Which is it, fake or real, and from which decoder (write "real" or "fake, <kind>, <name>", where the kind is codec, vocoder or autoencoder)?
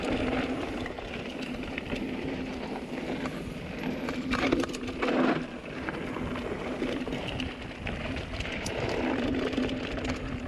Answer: fake, vocoder, BigVGAN v2